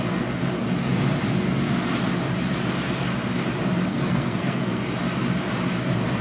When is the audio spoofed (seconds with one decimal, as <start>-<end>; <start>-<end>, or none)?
3.9-4.8